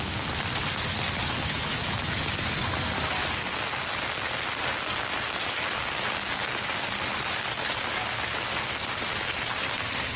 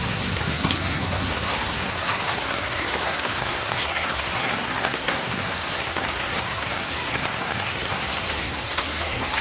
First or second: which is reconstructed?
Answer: second